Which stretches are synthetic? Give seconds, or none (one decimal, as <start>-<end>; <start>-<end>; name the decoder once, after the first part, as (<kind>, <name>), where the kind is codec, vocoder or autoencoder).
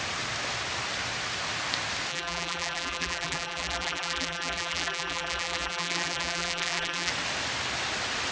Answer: 2.1-7.1 (vocoder, BigVGAN v2)